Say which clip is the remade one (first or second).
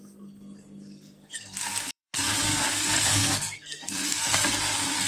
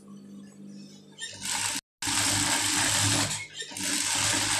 first